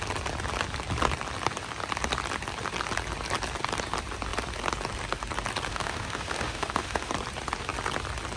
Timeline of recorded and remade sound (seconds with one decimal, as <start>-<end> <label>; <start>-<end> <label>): 0.0-5.7 recorded; 5.7-7.1 remade; 7.1-8.4 recorded